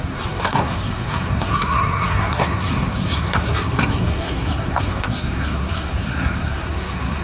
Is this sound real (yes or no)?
no